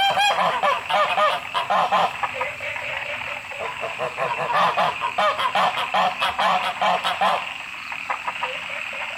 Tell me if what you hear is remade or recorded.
recorded